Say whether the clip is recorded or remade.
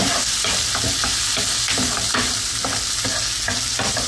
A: recorded